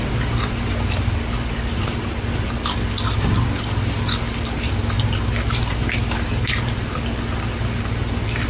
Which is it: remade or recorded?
remade